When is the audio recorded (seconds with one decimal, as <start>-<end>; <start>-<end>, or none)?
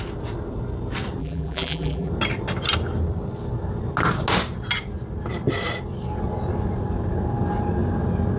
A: 0.0-1.2; 2.1-8.4